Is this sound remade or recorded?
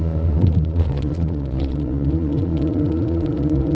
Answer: remade